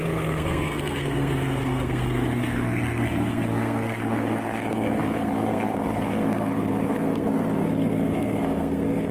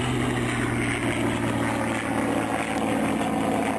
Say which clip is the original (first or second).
second